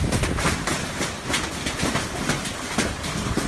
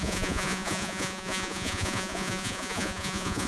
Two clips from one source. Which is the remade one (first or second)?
second